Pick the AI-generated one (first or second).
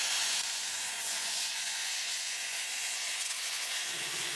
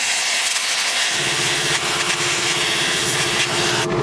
first